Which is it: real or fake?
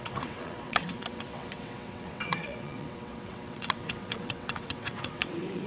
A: fake